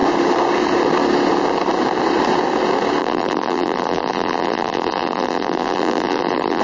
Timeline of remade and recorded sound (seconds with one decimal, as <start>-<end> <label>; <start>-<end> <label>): 0.0-3.0 recorded; 3.0-6.6 remade